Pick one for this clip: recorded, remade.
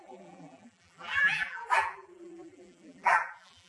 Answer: remade